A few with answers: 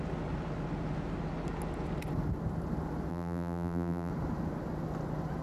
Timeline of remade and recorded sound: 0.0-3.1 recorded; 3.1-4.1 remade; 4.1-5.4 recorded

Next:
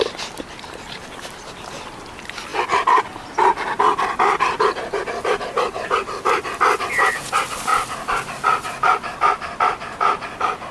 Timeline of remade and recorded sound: 0.0-10.7 recorded

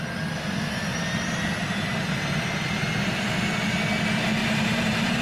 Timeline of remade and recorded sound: 0.0-4.4 recorded; 4.4-5.2 remade

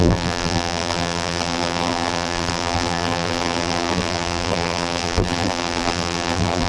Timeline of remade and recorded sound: 0.0-6.7 remade

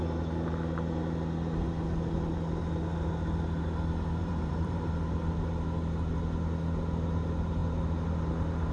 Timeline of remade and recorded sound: 0.0-4.2 recorded; 4.2-4.9 remade; 4.9-8.7 recorded

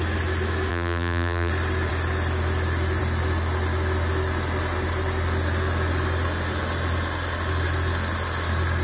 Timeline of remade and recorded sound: 0.0-0.7 recorded; 0.7-1.5 remade; 1.5-8.8 recorded